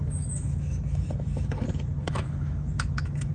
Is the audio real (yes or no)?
no